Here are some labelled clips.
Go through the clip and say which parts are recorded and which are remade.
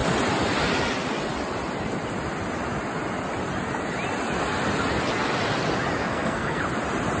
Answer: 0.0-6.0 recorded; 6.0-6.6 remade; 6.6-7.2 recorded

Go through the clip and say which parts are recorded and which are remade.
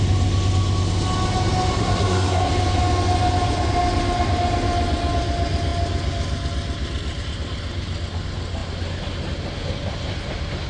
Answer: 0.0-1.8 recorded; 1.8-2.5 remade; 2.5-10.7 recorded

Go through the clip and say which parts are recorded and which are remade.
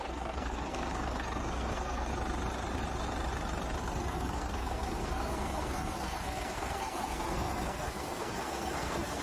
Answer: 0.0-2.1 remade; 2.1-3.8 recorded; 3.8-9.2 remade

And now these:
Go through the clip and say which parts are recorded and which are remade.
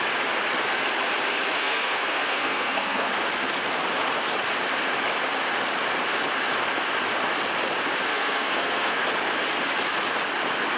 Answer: 0.0-1.6 recorded; 1.6-3.1 remade; 3.1-8.1 recorded; 8.1-9.0 remade; 9.0-10.8 recorded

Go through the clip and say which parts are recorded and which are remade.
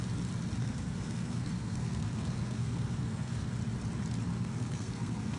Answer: 0.0-0.6 recorded; 0.6-3.5 remade; 3.5-4.3 recorded; 4.3-5.4 remade